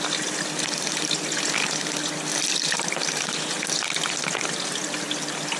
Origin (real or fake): real